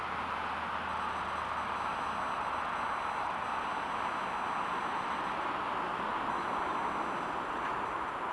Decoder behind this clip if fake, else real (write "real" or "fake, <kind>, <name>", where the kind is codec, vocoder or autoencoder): real